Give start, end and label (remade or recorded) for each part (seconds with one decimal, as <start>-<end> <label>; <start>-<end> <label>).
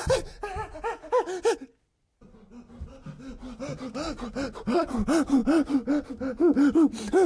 0.0-7.3 recorded